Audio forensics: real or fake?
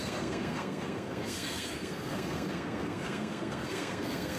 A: fake